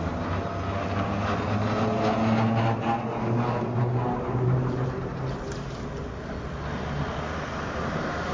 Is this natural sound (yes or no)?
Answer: yes